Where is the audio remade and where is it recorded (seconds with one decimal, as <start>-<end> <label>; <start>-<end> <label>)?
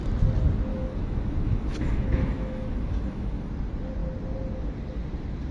0.0-0.7 recorded; 0.7-3.5 remade; 3.5-5.5 recorded